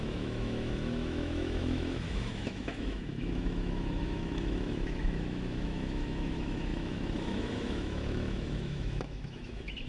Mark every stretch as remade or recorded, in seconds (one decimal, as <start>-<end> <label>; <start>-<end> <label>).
0.0-9.9 remade